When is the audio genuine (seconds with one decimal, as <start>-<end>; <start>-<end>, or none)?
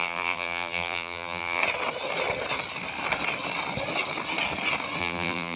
1.6-5.0